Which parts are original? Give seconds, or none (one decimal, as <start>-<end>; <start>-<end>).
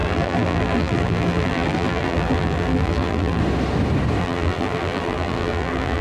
3.4-4.2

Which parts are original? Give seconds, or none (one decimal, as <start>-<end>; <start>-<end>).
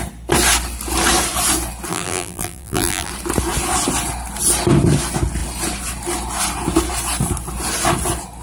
0.0-1.9; 3.1-8.4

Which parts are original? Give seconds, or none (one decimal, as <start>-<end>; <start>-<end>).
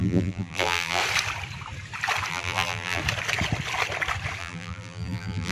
1.0-2.3; 3.0-4.4